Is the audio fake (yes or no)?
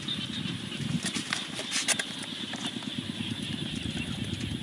no